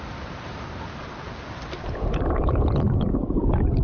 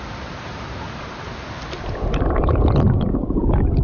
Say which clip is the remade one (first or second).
first